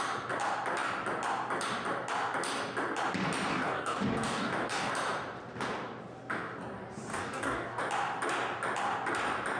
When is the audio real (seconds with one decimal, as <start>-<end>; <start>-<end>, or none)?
0.0-3.5; 4.9-7.1; 7.8-9.6